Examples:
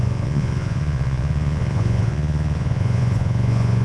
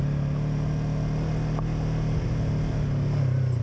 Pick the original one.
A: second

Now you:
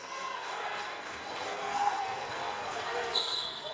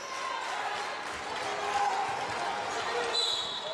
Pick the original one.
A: second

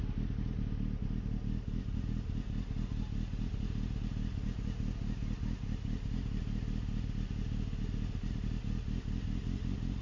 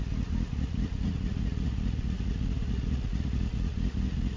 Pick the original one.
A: first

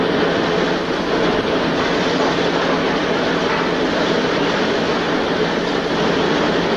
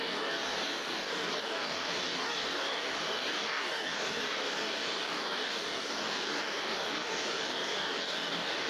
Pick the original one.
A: first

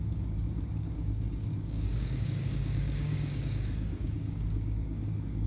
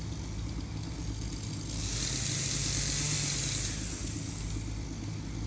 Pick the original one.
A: second